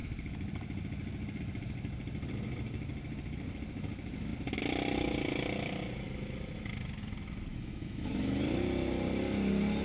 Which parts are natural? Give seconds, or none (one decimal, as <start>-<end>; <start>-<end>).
0.0-7.5; 8.1-9.8